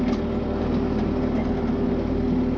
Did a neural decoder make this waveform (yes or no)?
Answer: no